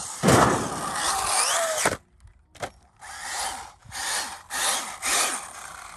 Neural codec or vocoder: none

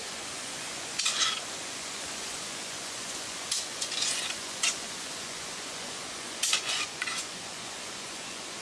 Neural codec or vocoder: vocoder, Vocos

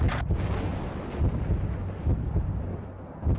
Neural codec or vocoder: none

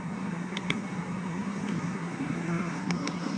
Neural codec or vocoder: codec, SNAC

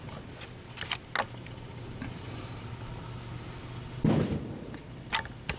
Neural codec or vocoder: none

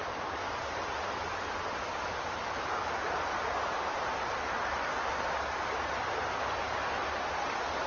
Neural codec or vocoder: none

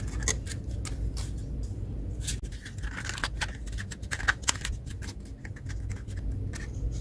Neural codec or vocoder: none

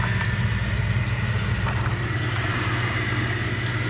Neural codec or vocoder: none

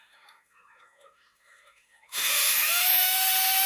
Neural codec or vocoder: autoencoder, DAC-VAE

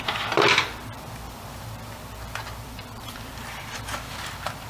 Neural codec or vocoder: vocoder, BigVGAN v2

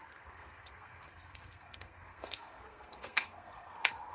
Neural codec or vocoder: codec, SNAC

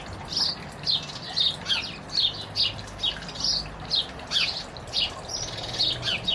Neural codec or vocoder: none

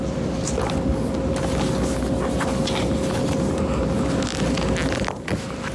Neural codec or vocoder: none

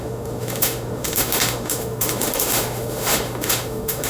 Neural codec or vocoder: autoencoder, DAC-VAE